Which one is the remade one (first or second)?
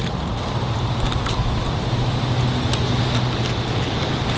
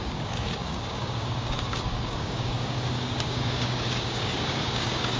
second